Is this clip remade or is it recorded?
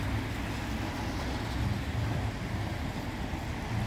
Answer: recorded